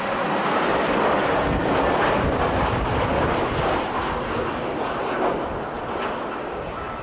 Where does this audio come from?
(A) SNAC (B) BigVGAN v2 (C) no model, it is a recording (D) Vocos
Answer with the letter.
C